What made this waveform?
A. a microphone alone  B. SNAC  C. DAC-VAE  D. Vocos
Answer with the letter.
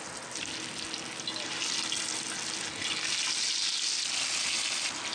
A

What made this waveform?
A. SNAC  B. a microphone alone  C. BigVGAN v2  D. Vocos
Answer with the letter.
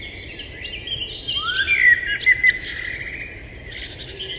B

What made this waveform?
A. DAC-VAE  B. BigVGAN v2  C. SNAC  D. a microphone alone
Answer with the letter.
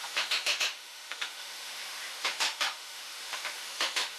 A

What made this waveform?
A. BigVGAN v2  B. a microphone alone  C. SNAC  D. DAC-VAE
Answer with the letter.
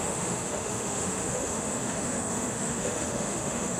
D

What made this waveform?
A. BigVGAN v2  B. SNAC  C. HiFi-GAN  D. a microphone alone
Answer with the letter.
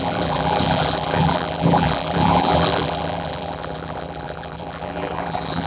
A